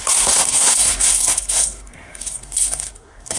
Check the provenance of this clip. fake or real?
fake